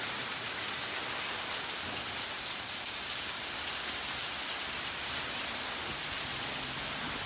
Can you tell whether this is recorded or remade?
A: recorded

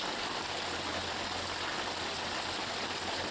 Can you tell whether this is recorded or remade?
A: recorded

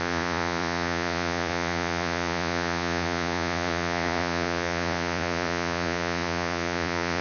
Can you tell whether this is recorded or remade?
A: remade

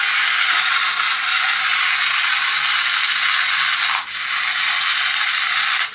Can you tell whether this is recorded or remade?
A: recorded